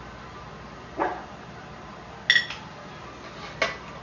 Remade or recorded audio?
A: recorded